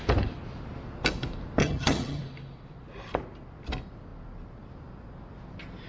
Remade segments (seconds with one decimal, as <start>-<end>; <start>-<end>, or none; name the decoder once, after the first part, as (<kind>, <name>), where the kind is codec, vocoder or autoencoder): 1.6-2.2 (vocoder, HiFi-GAN)